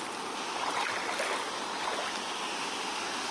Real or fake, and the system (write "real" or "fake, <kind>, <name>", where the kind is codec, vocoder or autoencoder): real